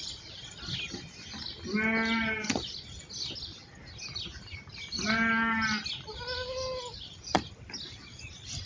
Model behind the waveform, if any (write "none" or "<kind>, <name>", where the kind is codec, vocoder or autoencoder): none